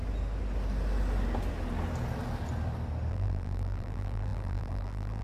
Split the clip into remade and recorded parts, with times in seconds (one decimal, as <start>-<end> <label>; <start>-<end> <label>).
0.0-3.1 recorded; 3.1-5.2 remade